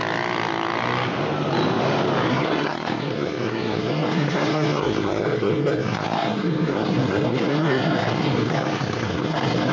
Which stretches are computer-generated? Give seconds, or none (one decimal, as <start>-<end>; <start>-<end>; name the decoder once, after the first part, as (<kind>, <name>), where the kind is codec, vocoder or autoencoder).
2.3-9.7 (codec, SNAC)